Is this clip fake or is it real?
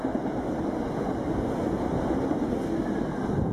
real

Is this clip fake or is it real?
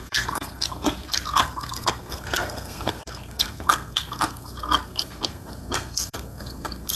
fake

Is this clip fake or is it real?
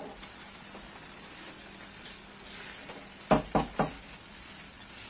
real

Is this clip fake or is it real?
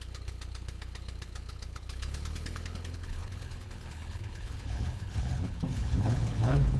fake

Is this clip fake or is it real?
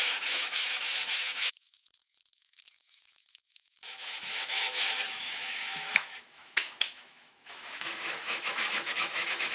fake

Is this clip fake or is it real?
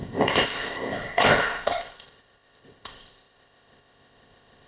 fake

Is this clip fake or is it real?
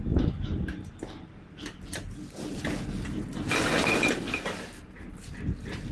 real